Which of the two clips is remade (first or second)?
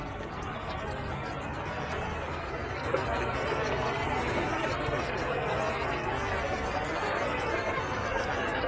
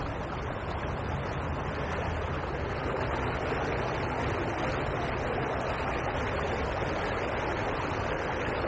first